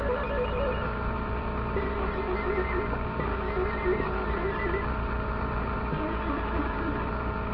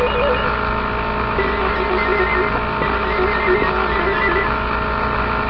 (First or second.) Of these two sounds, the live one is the second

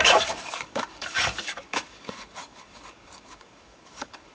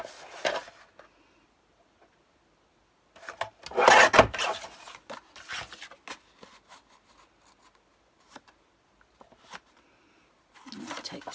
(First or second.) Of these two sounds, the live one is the second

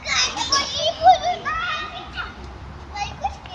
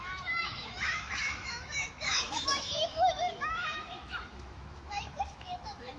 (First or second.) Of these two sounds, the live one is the first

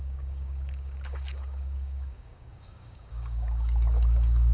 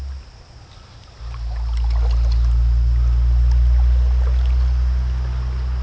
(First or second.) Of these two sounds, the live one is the second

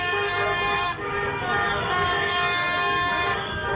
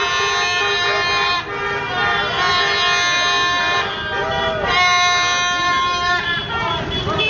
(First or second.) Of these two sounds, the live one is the second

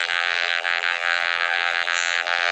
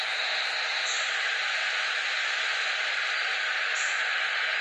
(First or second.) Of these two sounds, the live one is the second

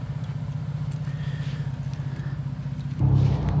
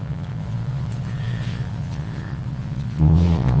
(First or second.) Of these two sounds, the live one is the first